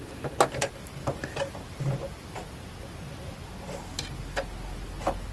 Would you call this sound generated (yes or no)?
no